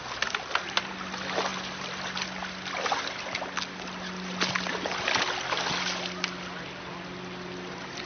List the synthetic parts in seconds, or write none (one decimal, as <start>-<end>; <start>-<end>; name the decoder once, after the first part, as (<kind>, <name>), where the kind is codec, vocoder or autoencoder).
none